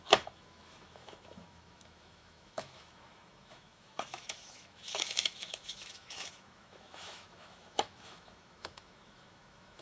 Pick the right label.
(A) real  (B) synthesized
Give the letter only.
B